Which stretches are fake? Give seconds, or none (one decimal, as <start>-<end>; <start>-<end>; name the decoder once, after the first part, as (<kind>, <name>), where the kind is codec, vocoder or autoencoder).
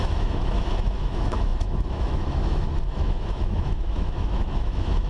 0.0-5.1 (autoencoder, DAC-VAE)